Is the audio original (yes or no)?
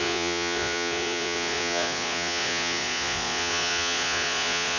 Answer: no